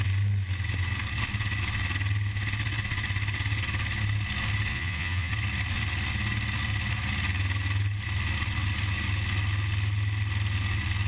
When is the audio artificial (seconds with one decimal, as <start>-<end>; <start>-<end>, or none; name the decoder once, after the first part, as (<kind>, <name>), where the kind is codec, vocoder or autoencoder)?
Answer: 4.7-5.3 (vocoder, Vocos)